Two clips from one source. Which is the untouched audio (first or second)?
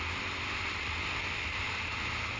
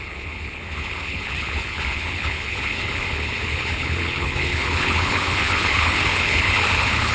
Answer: first